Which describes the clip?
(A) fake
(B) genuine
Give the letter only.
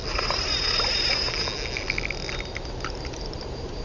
B